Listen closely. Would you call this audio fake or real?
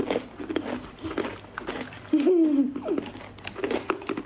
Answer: real